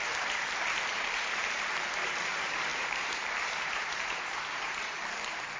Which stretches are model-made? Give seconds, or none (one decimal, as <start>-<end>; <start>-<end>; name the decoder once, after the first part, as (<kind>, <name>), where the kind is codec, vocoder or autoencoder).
0.0-5.6 (vocoder, BigVGAN v2)